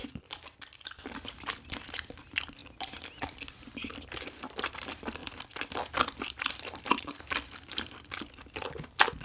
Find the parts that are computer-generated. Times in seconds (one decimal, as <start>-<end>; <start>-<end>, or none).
0.0-2.6; 3.6-5.2; 5.9-9.2

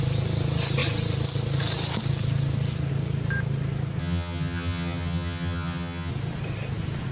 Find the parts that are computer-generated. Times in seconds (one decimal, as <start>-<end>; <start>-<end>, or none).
4.0-6.1